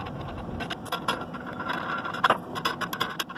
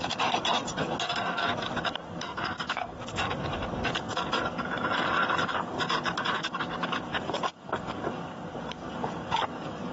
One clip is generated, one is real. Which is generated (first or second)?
second